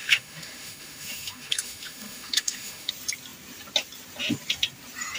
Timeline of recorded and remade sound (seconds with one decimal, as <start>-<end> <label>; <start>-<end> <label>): 0.0-2.9 remade; 2.9-5.2 recorded